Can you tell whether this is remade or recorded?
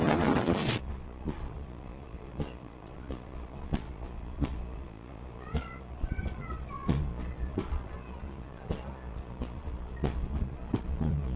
remade